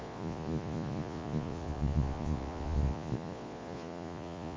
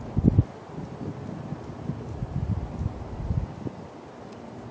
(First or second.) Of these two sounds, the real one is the second